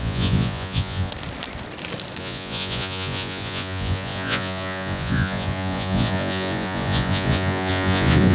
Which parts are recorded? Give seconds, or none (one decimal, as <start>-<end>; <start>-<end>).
1.1-2.2

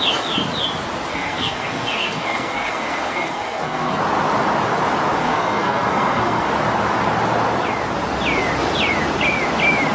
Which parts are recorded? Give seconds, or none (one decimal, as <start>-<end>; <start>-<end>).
0.0-1.1; 4.0-5.2; 6.5-9.9

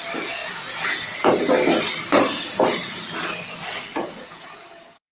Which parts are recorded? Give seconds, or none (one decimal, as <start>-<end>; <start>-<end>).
0.0-0.4; 1.5-3.9

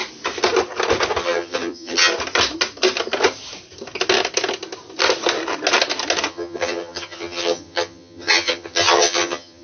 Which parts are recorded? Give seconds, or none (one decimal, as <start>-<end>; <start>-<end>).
0.0-1.2; 2.1-6.3